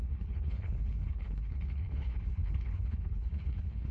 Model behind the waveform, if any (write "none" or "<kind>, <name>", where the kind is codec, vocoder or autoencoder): codec, HILCodec